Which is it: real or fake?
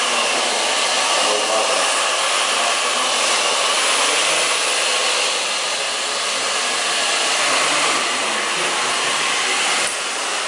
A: real